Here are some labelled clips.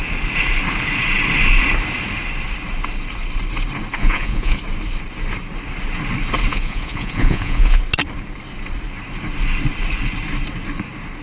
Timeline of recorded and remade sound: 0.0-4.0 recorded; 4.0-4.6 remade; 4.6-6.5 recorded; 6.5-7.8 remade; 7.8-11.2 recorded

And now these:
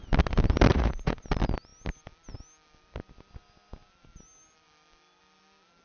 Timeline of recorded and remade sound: 0.0-0.7 recorded; 0.7-1.2 remade; 1.2-5.8 recorded

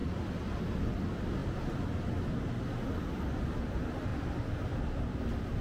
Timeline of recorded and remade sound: 0.0-5.6 recorded

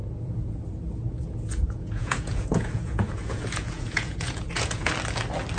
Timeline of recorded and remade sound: 0.0-0.6 remade; 0.6-1.6 recorded; 1.6-4.9 remade; 4.9-5.6 recorded

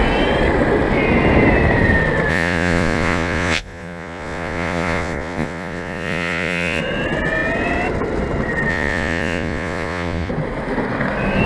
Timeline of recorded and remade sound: 0.0-2.3 recorded; 2.3-6.8 remade; 6.8-8.7 recorded; 8.7-10.3 remade; 10.3-11.5 recorded

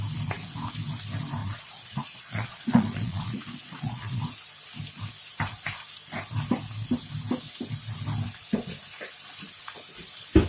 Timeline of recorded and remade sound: 0.0-1.4 recorded; 1.4-4.2 remade; 4.2-10.5 recorded